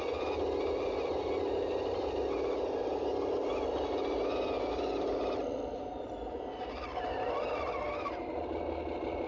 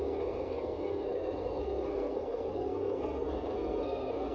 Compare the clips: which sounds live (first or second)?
first